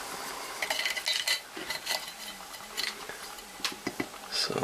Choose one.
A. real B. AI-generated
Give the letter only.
A